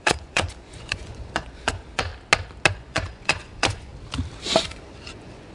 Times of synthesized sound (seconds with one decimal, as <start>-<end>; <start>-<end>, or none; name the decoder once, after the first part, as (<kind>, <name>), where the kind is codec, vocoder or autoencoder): 0.0-2.1 (vocoder, Vocos); 2.7-3.9; 4.6-5.5